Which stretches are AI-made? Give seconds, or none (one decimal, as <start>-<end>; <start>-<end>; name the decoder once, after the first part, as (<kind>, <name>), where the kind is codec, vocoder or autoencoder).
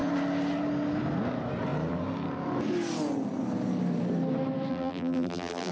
4.7-5.7 (vocoder, BigVGAN v2)